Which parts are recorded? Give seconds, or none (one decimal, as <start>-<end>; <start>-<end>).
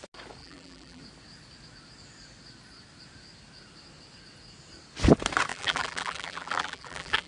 0.0-0.4; 1.0-5.5